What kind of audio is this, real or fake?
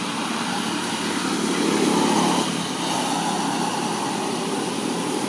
real